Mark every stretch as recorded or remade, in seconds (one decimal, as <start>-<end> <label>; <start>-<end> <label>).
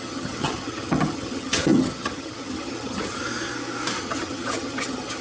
0.0-3.2 remade; 3.2-4.0 recorded; 4.0-5.2 remade